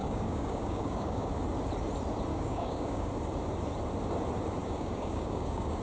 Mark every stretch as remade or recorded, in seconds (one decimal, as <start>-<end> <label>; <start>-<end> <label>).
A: 0.0-1.3 remade; 1.3-2.3 recorded; 2.3-3.1 remade; 3.1-4.6 recorded; 4.6-5.8 remade